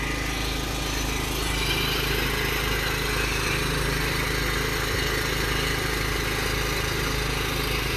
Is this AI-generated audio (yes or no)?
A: no